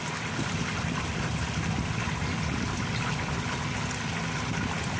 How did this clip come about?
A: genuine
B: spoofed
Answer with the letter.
A